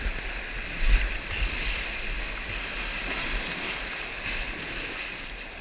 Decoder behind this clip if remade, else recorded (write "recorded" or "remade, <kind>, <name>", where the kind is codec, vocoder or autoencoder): recorded